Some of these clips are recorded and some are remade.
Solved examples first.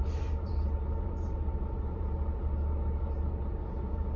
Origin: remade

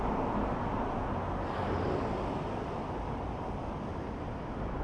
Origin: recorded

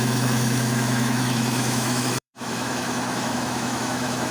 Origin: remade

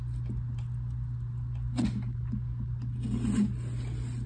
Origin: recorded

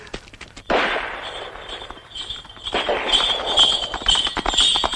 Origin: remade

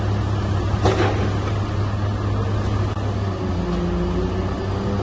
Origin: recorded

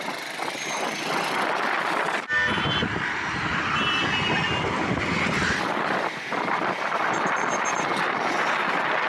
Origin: recorded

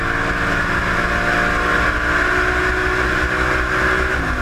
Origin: recorded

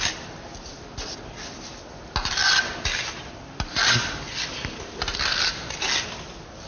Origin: recorded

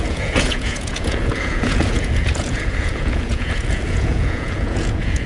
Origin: remade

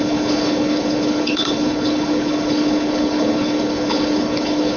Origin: remade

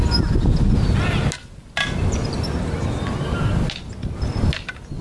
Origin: recorded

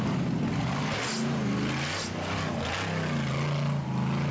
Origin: recorded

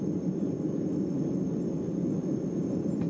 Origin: recorded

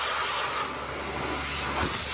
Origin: recorded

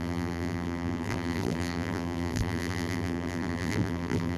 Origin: remade